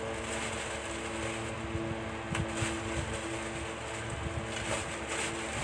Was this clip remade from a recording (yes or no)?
no